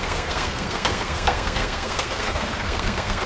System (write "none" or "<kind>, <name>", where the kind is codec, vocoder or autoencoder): codec, SNAC